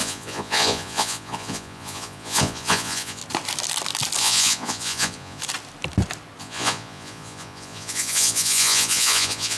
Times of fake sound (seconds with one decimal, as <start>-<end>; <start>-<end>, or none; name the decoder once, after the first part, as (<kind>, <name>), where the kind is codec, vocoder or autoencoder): 0.0-3.2 (vocoder, Vocos); 4.2-5.4; 6.4-9.6